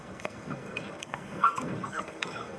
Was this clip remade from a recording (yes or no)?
yes